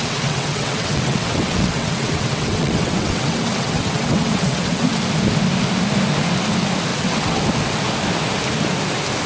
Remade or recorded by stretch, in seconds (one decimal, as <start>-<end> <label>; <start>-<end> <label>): 0.0-5.0 remade; 5.0-6.9 recorded; 6.9-7.4 remade; 7.4-9.3 recorded